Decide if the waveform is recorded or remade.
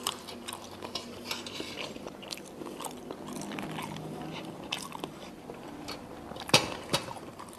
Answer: remade